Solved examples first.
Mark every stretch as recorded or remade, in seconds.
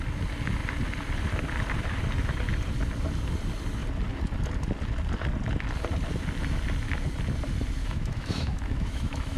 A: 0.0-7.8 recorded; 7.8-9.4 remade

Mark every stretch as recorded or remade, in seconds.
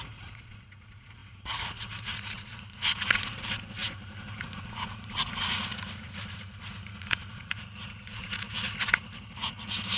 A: 0.0-10.0 remade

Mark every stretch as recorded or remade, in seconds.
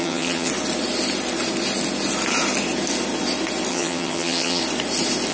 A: 0.0-0.5 remade; 0.5-3.7 recorded; 3.7-4.6 remade; 4.6-5.3 recorded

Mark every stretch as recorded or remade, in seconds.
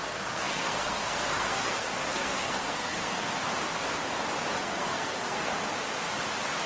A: 0.0-3.4 remade; 3.4-4.6 recorded; 4.6-5.5 remade; 5.5-6.7 recorded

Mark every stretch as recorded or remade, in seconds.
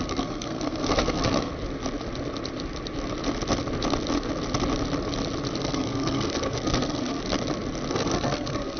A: 0.0-1.5 remade; 1.5-5.6 recorded; 5.6-7.2 remade; 7.2-7.9 recorded; 7.9-8.8 remade